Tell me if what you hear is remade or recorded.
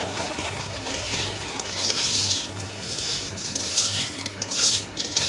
remade